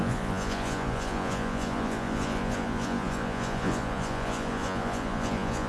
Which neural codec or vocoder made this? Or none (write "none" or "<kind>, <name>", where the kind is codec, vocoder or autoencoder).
vocoder, Vocos